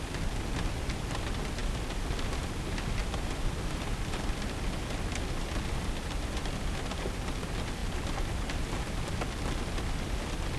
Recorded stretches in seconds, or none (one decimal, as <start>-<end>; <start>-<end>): 0.0-10.6